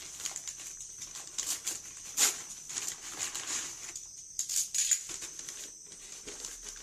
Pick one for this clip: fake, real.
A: real